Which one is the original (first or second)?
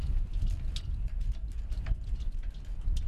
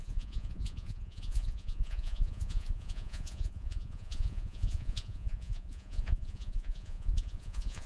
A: first